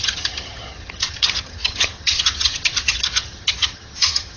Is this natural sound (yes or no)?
no